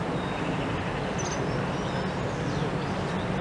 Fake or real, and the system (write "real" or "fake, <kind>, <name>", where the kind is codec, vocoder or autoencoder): real